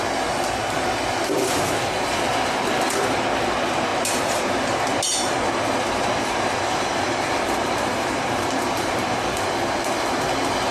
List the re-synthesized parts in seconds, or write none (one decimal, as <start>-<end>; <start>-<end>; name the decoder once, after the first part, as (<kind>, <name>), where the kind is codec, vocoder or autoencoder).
3.9-9.2 (vocoder, BigVGAN v2)